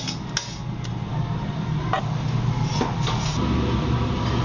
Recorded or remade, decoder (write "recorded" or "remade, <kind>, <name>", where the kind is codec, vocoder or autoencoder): recorded